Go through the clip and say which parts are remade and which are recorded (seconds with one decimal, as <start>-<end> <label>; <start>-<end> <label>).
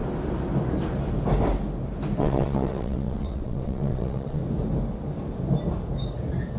0.0-2.2 recorded; 2.2-4.4 remade; 4.4-6.6 recorded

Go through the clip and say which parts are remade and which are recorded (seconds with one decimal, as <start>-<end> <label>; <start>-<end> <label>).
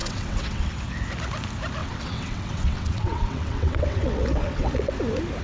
0.0-0.7 remade; 0.7-1.8 recorded; 1.8-5.0 remade; 5.0-5.4 recorded